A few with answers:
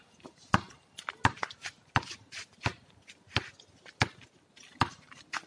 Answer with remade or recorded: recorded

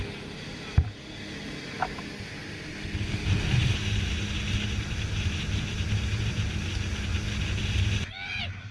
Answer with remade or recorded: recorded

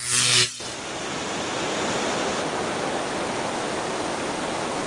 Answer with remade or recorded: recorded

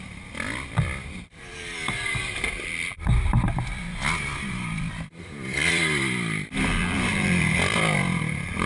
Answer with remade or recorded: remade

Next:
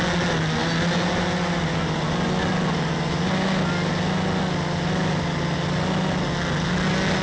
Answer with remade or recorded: recorded